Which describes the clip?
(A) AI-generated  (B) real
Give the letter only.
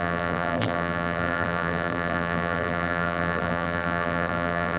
A